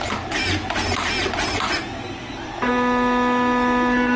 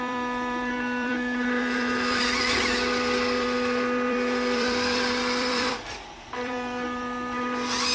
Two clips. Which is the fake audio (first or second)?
second